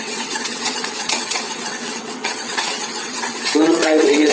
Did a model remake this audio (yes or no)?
yes